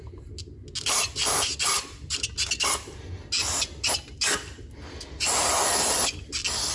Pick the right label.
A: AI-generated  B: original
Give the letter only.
B